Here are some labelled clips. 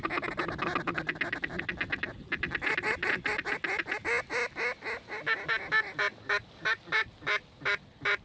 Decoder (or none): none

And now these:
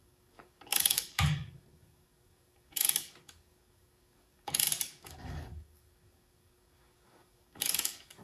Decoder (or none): codec, DAC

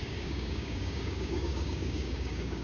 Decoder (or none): codec, DAC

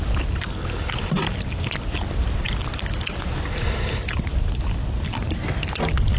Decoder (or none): none